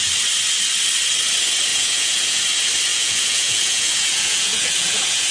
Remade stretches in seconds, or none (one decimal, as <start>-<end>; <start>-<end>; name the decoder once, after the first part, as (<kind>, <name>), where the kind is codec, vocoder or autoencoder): 1.7-2.4 (vocoder, Vocos); 2.9-5.3